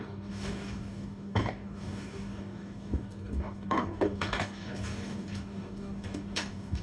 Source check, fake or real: fake